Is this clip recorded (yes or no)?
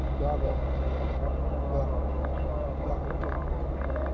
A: yes